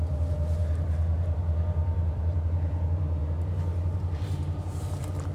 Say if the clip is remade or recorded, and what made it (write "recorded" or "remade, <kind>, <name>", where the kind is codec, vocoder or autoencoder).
remade, vocoder, BigVGAN v2